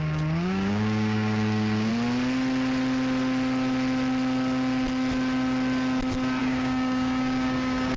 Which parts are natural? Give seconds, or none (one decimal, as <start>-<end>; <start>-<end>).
1.9-6.4